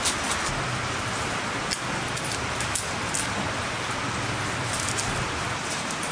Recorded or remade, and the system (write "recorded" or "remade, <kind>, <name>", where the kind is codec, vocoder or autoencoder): recorded